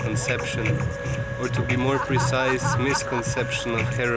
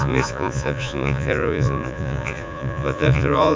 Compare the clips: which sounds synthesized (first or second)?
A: second